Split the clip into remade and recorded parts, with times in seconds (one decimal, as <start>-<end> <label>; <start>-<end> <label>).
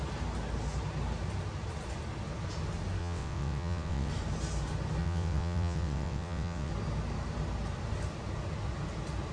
0.0-3.0 recorded; 3.0-4.1 remade; 4.1-5.0 recorded; 5.0-6.7 remade; 6.7-9.3 recorded